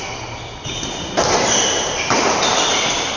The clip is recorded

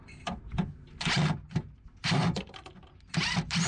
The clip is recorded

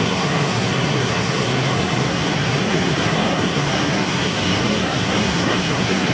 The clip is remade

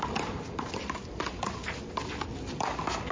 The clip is recorded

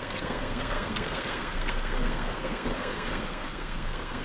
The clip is remade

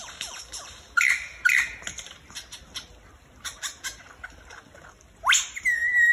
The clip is recorded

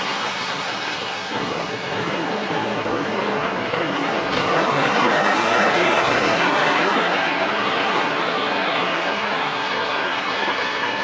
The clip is remade